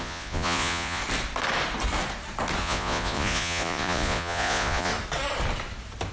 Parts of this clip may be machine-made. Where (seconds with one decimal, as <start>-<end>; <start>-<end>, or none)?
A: 0.0-1.0; 2.6-4.9